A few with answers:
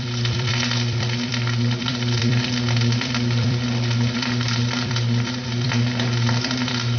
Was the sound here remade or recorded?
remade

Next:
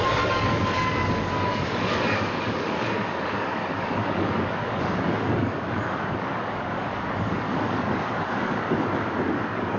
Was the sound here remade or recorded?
remade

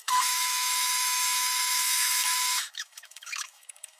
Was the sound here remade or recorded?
remade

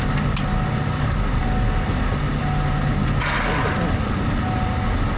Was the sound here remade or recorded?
recorded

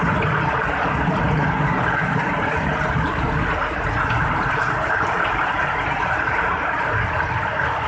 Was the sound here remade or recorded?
recorded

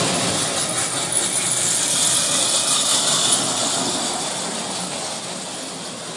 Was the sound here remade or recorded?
recorded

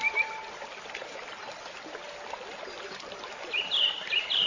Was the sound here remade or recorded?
recorded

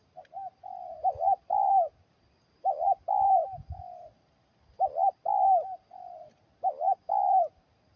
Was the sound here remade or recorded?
recorded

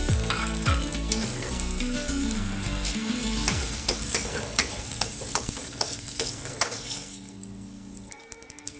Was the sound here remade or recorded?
remade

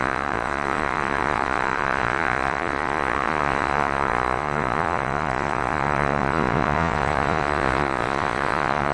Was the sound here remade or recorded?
remade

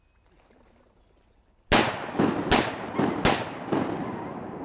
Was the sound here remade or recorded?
recorded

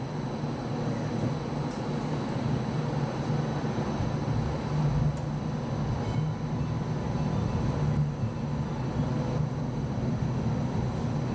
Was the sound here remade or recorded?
recorded